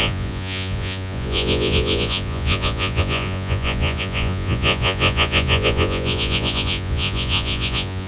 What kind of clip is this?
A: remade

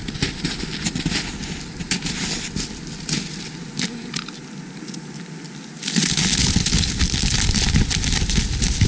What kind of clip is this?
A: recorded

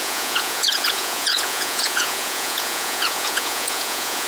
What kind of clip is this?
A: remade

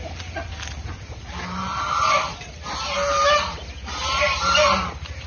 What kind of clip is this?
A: recorded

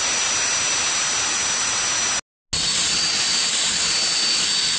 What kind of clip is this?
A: recorded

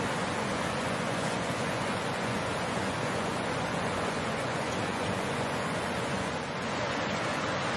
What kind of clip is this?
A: remade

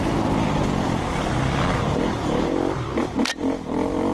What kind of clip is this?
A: recorded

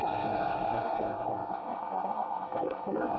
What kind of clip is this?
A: remade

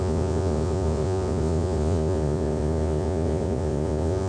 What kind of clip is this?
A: remade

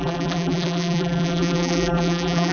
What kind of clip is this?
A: remade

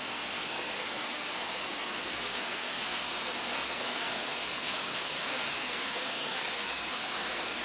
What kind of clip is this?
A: remade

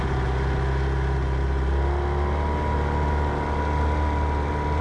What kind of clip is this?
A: recorded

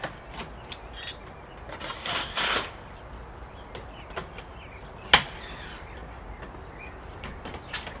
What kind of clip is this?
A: recorded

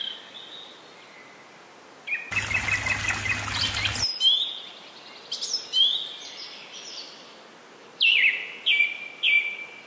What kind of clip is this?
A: recorded